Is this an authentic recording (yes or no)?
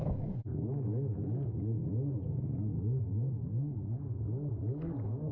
no